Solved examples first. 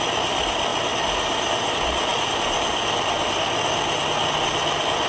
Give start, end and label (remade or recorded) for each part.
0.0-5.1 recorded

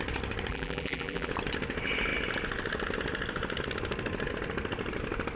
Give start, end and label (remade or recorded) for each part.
0.0-0.5 recorded; 0.5-1.3 remade; 1.3-5.4 recorded

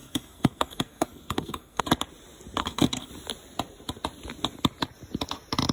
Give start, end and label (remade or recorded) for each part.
0.0-1.8 remade; 1.8-2.6 recorded; 2.6-3.1 remade; 3.1-5.7 recorded

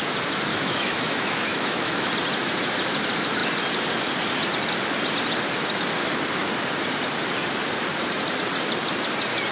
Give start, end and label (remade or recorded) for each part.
0.0-0.5 recorded; 0.5-2.1 remade; 2.1-9.5 recorded

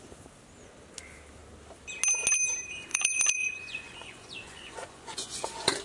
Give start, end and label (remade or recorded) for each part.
0.0-2.9 recorded; 2.9-5.8 remade

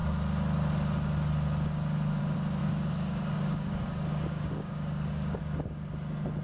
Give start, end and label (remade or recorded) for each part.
0.0-2.6 recorded; 2.6-5.4 remade; 5.4-6.4 recorded